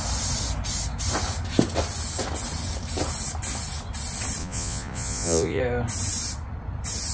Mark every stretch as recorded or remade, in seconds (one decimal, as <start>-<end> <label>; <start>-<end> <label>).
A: 0.0-4.4 recorded; 4.4-5.6 remade; 5.6-7.1 recorded